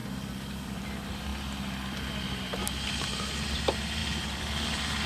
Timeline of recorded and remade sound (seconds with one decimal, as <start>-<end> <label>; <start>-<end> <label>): 0.0-0.8 remade; 0.8-1.3 recorded; 1.3-2.1 remade; 2.1-4.0 recorded; 4.0-5.1 remade